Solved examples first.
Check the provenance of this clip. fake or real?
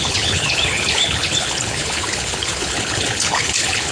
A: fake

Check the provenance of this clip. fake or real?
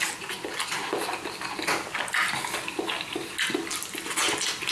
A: real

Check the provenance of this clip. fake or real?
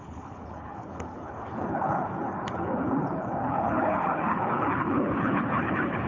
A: fake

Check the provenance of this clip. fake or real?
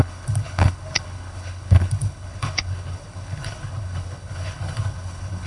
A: fake